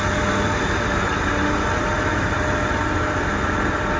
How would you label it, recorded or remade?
recorded